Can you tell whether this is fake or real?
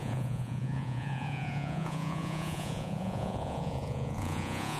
fake